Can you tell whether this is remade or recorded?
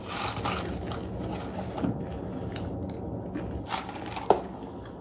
recorded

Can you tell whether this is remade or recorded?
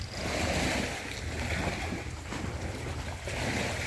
recorded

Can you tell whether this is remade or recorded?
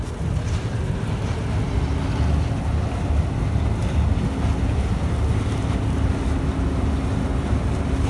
recorded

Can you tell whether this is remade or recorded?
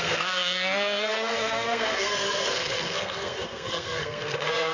remade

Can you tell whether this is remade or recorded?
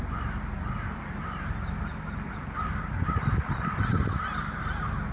recorded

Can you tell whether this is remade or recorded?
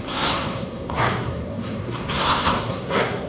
remade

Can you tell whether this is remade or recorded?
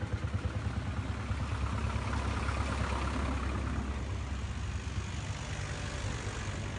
recorded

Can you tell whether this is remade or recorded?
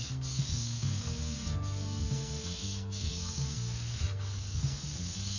remade